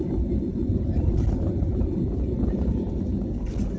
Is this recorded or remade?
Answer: recorded